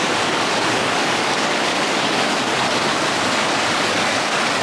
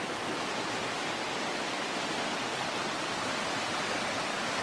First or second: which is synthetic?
first